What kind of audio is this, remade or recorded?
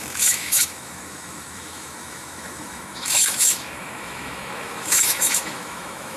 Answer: remade